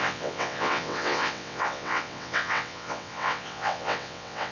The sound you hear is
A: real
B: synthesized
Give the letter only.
B